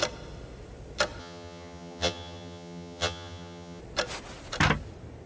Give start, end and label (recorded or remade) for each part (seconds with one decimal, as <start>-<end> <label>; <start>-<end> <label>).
0.0-1.2 recorded; 1.2-3.8 remade; 3.8-5.3 recorded